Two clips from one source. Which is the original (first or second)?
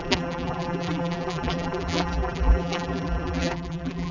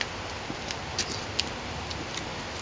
second